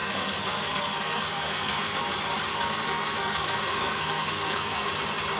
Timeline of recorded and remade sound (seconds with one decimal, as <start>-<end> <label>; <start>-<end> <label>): 0.0-2.1 remade; 2.1-2.5 recorded; 2.5-4.9 remade; 4.9-5.4 recorded